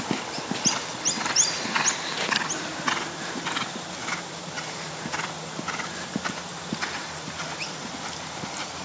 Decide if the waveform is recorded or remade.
recorded